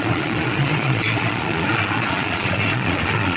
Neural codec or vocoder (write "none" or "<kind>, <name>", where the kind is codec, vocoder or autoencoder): vocoder, Vocos